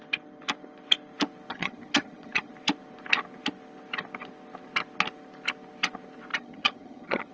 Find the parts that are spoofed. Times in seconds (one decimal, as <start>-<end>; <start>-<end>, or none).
1.5-2.5; 6.3-7.3